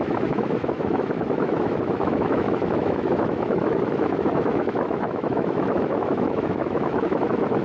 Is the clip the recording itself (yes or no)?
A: no